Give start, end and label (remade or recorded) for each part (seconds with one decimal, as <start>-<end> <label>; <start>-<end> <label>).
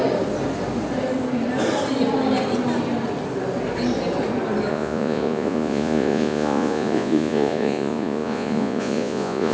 0.0-4.7 recorded; 4.7-9.5 remade